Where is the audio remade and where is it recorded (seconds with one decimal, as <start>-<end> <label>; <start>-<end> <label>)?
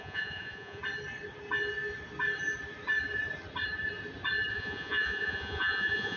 0.0-0.8 remade; 0.8-4.5 recorded; 4.5-6.2 remade